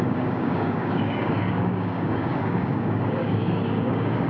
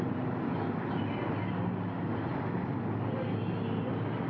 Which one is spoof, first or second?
first